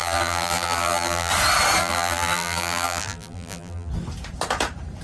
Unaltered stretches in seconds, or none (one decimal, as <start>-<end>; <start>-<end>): 1.3-1.8; 3.9-5.0